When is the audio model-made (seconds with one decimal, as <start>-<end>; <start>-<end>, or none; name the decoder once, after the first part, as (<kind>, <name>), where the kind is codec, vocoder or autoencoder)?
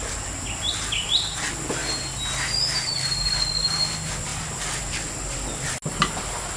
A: none